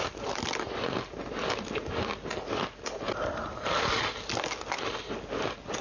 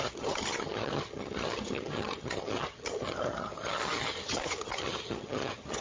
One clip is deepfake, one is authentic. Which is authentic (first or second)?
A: first